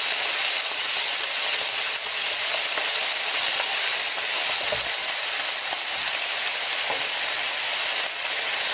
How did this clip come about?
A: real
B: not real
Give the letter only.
A